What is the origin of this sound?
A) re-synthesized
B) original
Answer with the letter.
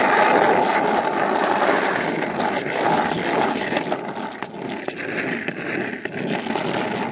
B